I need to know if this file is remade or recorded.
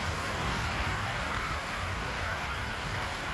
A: remade